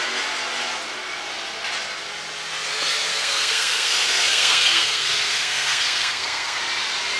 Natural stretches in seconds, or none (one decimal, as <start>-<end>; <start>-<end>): 0.0-3.1; 6.6-7.2